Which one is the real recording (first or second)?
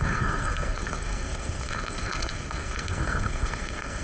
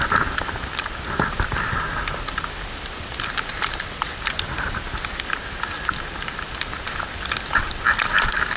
second